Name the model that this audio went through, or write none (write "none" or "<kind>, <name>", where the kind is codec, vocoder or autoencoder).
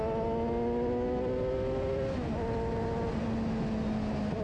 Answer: none